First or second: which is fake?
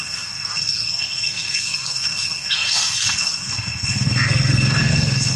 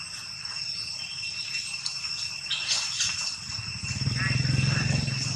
first